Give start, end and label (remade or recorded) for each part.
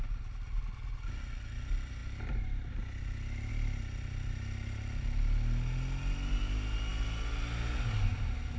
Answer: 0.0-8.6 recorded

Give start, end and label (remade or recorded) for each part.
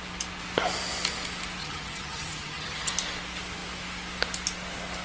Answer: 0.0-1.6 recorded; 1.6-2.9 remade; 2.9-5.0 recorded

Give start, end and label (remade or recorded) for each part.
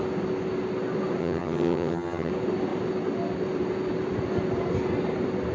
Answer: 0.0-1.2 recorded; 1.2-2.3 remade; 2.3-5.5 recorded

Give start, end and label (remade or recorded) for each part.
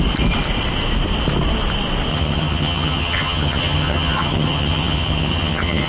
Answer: 0.0-2.1 recorded; 2.1-5.9 remade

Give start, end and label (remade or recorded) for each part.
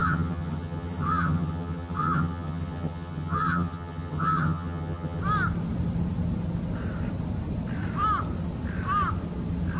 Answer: 0.0-5.2 remade; 5.2-9.8 recorded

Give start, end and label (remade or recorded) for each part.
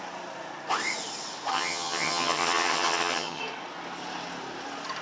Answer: 0.0-1.5 recorded; 1.5-3.4 remade; 3.4-5.0 recorded